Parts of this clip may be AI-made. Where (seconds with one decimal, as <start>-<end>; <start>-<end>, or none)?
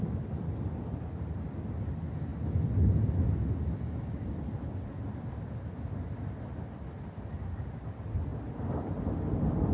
none